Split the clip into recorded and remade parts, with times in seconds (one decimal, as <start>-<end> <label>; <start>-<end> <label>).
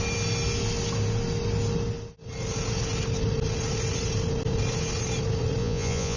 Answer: 0.0-5.6 recorded; 5.6-6.2 remade